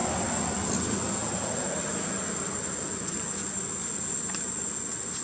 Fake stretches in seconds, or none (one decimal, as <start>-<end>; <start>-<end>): none